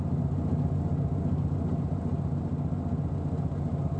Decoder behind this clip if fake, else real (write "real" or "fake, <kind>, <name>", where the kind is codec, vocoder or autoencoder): real